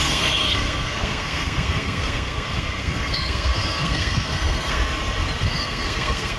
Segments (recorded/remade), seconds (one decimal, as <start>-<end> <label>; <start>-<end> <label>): 0.0-4.8 remade; 4.8-5.4 recorded; 5.4-6.4 remade

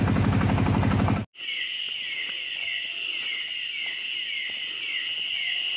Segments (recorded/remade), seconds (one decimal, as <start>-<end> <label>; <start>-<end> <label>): 0.0-5.8 recorded

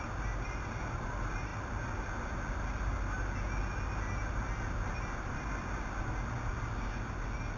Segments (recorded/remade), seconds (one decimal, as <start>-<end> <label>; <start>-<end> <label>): 0.0-7.6 recorded

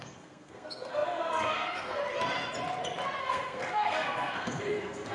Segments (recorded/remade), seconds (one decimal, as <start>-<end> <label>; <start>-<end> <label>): 0.0-2.0 remade; 2.0-3.2 recorded; 3.2-5.1 remade